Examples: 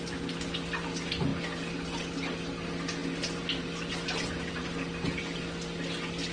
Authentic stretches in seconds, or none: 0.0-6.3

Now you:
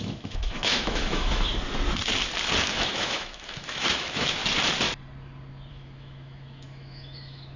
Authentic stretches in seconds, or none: 1.5-2.6; 4.4-5.7

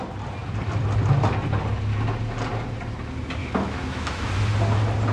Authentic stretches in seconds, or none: 0.0-3.4; 4.3-5.1

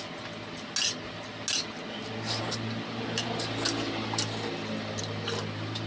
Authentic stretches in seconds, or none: 0.0-5.9

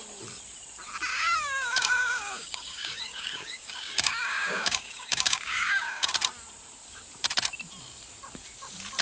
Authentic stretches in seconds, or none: 0.0-1.1; 6.1-9.0

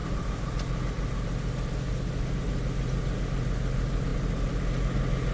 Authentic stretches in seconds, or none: 0.0-5.3

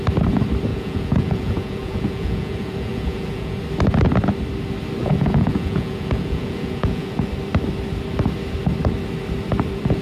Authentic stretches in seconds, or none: 0.0-0.7; 3.6-5.0; 7.3-10.0

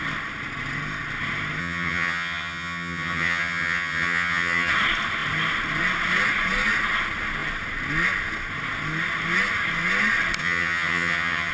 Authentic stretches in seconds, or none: 0.0-1.6; 4.7-10.4